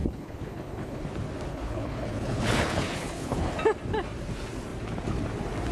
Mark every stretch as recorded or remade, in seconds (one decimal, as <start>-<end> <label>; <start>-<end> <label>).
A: 0.0-1.0 remade; 1.0-1.5 recorded; 1.5-3.5 remade; 3.5-5.7 recorded